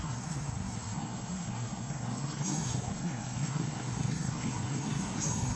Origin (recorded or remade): remade